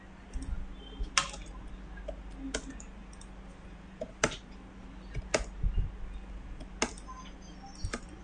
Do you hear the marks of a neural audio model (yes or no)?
no